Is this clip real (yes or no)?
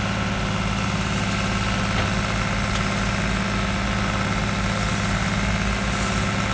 yes